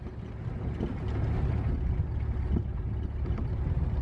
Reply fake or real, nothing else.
real